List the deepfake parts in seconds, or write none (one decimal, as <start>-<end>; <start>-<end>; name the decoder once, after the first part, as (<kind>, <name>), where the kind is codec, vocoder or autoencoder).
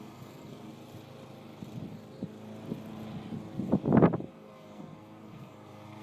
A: 0.0-0.7 (codec, SNAC); 4.3-6.0